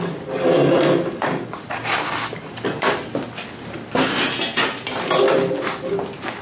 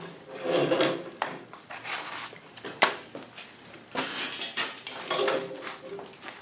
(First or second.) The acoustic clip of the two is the first